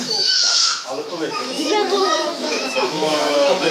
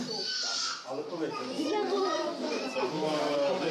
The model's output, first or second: first